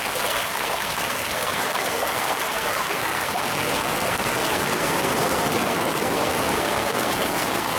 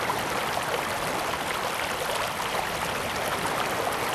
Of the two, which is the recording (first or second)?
second